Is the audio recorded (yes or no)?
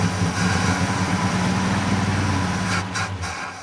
yes